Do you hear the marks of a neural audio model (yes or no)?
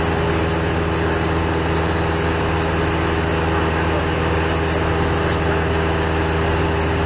no